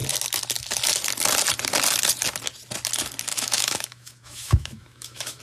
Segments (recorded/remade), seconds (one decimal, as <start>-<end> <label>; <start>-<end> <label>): 0.0-3.3 recorded; 3.3-5.4 remade